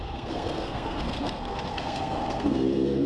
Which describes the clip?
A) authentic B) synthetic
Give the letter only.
B